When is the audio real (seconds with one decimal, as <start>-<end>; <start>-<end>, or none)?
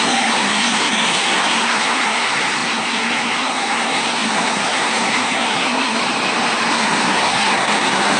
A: 6.0-6.7